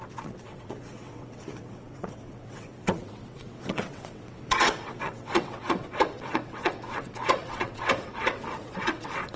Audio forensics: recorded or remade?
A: remade